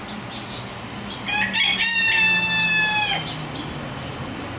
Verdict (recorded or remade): recorded